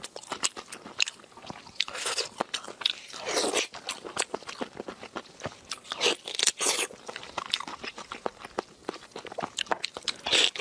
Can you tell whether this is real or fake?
real